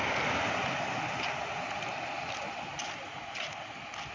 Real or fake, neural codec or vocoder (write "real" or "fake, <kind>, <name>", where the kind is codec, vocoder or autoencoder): real